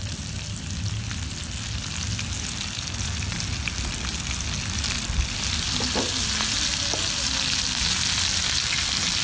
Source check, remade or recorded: recorded